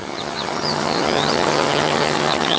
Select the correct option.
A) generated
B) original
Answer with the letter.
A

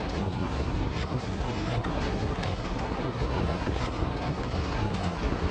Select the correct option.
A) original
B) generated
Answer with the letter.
B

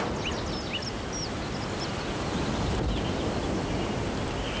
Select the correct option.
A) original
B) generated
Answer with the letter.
A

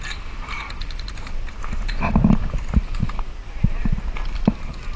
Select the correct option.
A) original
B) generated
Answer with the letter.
A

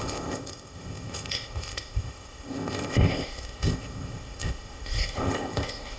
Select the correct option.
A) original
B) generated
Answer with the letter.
B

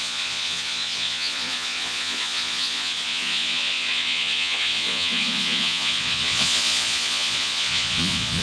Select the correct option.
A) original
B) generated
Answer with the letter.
B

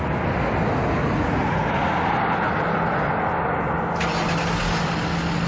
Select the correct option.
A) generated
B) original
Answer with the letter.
B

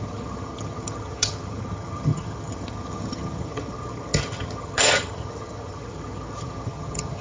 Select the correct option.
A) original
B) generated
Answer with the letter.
B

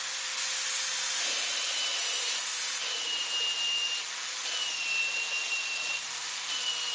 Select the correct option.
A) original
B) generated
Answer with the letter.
A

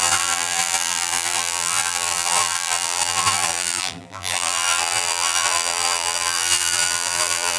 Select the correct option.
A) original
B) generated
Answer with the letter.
B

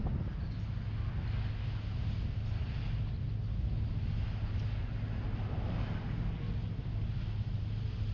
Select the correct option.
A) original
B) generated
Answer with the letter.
A